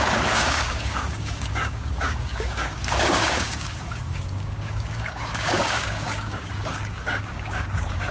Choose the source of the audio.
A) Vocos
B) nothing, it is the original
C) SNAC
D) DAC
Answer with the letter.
D